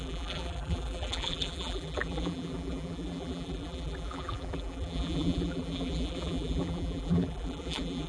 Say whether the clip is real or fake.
fake